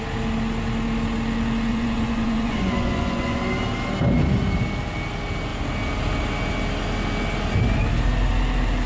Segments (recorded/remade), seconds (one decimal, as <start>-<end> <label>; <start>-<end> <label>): 0.0-1.7 recorded; 1.7-3.4 remade; 3.4-8.9 recorded